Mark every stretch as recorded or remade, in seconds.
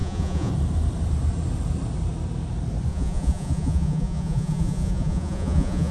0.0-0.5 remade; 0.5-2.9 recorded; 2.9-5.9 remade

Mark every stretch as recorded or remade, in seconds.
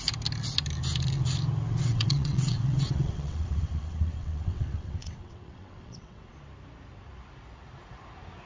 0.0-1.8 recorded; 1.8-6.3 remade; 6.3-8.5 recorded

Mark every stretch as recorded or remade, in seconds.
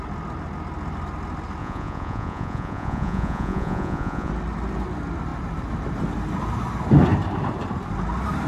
0.0-1.6 recorded; 1.6-4.3 remade; 4.3-8.5 recorded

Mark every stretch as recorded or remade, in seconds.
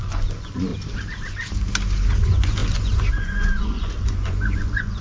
0.0-0.7 remade; 0.7-2.2 recorded; 2.2-5.0 remade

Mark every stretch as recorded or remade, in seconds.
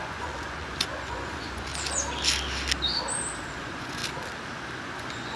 0.0-1.7 remade; 1.7-3.6 recorded; 3.6-4.0 remade; 4.0-4.8 recorded; 4.8-5.4 remade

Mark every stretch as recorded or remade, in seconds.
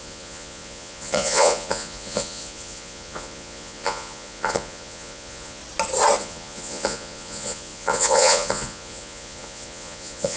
0.0-5.6 remade; 5.6-6.2 recorded; 6.2-10.4 remade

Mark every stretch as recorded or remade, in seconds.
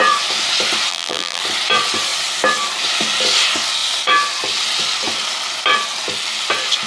0.0-0.9 recorded; 0.9-1.4 remade; 1.4-6.9 recorded